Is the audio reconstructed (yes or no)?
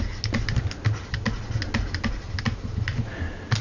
no